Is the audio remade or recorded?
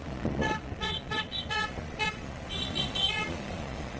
remade